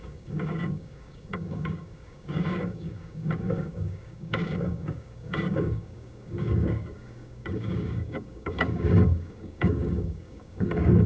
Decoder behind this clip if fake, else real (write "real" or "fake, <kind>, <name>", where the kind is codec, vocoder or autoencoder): fake, codec, DAC